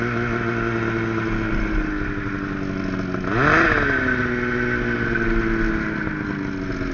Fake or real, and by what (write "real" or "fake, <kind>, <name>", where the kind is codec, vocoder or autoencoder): real